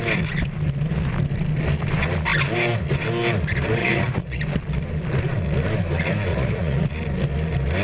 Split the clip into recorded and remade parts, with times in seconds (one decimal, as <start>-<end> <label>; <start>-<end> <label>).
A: 0.0-3.8 recorded; 3.8-4.4 remade; 4.4-6.3 recorded; 6.3-6.9 remade; 6.9-7.8 recorded